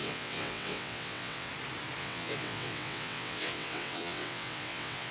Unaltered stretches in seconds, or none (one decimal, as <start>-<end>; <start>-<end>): 1.5-2.0

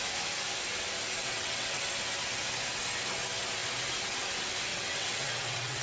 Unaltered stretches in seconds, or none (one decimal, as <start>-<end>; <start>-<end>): 0.0-1.2; 1.8-4.7